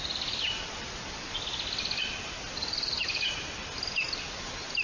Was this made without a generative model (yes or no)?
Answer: yes